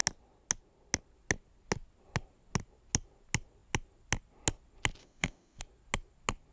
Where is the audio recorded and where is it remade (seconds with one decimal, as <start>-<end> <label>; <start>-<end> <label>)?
0.0-5.0 recorded; 5.0-5.6 remade; 5.6-6.5 recorded